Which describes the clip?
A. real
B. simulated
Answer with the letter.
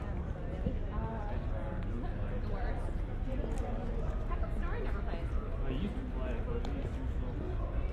A